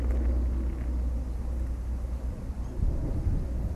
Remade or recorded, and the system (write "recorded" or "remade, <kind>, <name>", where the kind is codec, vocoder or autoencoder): recorded